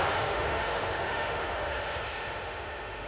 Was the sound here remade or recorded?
remade